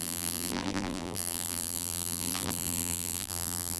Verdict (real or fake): fake